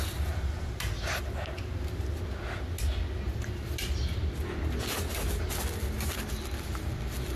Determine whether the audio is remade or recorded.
recorded